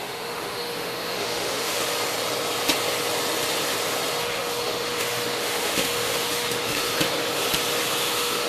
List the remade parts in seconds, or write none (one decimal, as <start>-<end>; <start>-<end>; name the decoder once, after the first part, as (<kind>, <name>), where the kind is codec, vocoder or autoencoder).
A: 0.0-1.9 (autoencoder, DAC-VAE); 4.2-6.9; 8.0-8.5